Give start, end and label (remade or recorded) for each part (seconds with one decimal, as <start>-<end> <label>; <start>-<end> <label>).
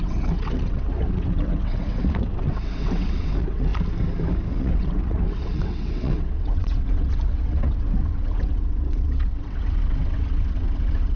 0.0-3.7 remade; 3.7-4.5 recorded; 4.5-11.2 remade